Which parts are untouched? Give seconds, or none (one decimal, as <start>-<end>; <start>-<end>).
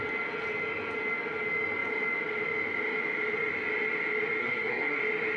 0.0-4.4; 5.0-5.4